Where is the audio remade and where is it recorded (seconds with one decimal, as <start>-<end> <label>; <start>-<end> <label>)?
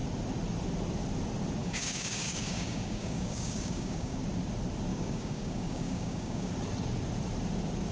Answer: 0.0-1.6 recorded; 1.6-4.2 remade; 4.2-4.9 recorded; 4.9-6.5 remade; 6.5-7.9 recorded